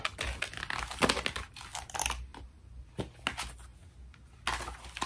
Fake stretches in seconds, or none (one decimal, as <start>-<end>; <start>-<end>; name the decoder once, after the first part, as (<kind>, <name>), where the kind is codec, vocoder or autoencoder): none